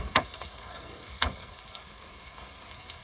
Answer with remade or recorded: remade